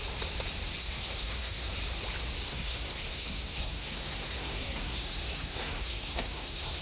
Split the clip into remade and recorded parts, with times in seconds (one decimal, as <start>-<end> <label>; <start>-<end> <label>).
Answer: 0.0-0.8 recorded; 0.8-1.7 remade; 1.7-2.5 recorded; 2.5-6.8 remade